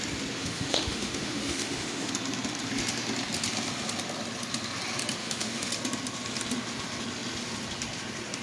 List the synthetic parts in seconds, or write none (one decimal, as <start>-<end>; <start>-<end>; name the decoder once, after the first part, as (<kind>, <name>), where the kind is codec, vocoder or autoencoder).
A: 0.4-2.1 (autoencoder, DAC-VAE); 5.2-5.7